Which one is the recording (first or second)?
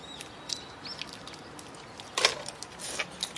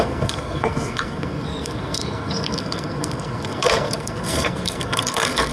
first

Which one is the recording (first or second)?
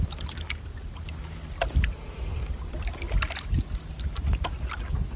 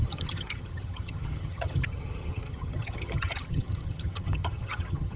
first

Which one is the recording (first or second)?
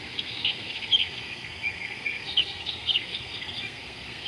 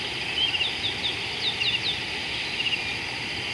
second